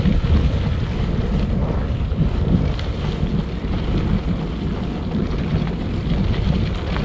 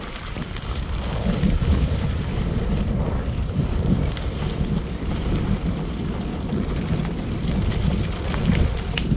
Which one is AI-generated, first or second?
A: second